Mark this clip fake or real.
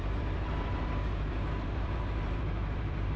fake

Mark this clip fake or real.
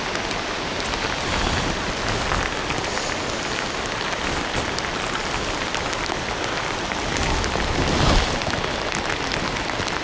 real